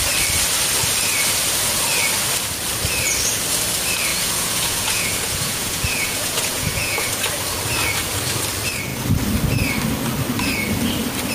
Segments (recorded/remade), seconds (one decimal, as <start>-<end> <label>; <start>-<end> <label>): 0.0-4.1 recorded; 4.1-7.1 remade; 7.1-11.3 recorded